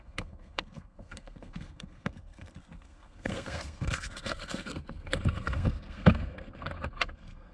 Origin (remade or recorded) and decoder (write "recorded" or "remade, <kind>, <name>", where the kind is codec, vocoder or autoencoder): remade, codec, SNAC